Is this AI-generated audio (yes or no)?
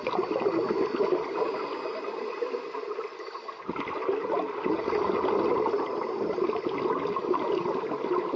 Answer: no